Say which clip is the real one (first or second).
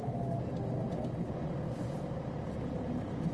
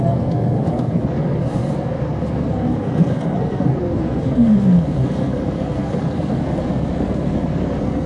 first